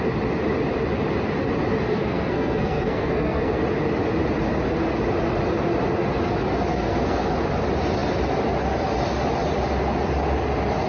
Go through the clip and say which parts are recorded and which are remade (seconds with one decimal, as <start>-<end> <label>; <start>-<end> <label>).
0.0-1.9 recorded; 1.9-3.6 remade; 3.6-6.7 recorded; 6.7-7.3 remade; 7.3-10.9 recorded